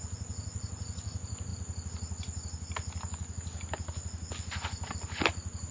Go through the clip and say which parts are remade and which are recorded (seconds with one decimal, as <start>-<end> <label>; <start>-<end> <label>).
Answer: 0.0-5.7 recorded